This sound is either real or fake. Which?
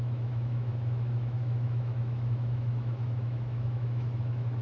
fake